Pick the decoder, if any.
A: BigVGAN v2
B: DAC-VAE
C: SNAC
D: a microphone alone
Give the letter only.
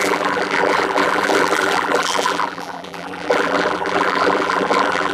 A